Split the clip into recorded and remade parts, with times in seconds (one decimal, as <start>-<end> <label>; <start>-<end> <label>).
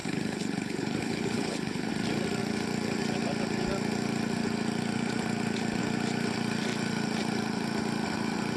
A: 0.0-1.9 remade; 1.9-8.6 recorded